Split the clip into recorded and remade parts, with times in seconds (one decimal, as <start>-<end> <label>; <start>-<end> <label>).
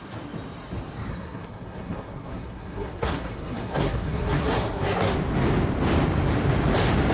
0.0-1.1 recorded; 1.1-5.1 remade; 5.1-7.1 recorded